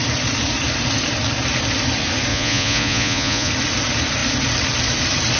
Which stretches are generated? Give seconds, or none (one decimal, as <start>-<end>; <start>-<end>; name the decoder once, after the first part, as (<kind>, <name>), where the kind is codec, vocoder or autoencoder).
2.3-3.5 (vocoder, Vocos)